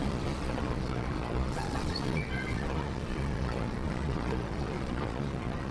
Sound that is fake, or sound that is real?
fake